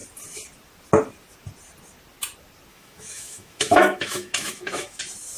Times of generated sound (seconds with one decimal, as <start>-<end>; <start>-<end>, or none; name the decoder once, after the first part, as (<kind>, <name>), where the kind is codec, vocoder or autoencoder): 2.7-5.0 (autoencoder, DAC-VAE)